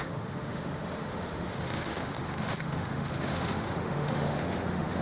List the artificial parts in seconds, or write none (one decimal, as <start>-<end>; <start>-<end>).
0.0-5.0